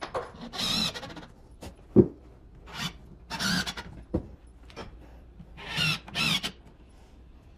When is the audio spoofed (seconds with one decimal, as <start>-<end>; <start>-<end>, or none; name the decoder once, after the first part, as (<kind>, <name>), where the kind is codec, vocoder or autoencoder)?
0.0-1.7 (vocoder, BigVGAN v2); 2.2-3.0; 3.6-4.8; 5.7-7.6